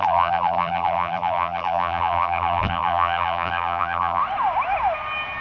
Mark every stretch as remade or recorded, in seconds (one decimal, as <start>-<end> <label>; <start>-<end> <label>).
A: 0.0-4.2 remade; 4.2-5.4 recorded